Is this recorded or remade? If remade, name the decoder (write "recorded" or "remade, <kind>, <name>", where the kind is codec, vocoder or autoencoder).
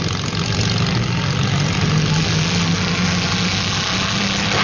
recorded